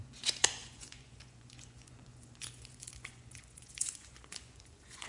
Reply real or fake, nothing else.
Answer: fake